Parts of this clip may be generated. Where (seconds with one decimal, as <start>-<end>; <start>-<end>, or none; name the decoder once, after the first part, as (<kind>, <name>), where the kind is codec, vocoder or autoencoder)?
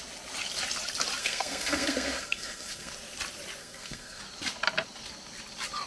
1.2-2.9 (codec, SNAC); 3.6-4.2